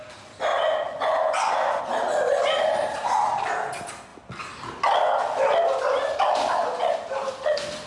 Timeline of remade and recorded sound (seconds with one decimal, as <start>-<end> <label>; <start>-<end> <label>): 0.0-0.5 recorded; 0.5-1.8 remade; 1.8-7.9 recorded

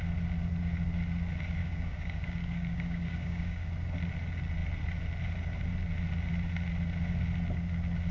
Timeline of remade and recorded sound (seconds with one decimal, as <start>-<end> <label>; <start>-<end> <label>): 0.0-1.6 recorded; 1.6-3.7 remade; 3.7-8.1 recorded